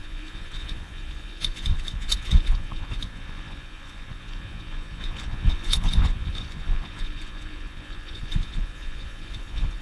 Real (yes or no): no